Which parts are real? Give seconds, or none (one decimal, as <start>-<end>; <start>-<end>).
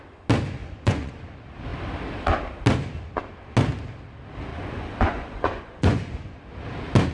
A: 0.0-0.6; 1.2-4.5; 6.4-7.1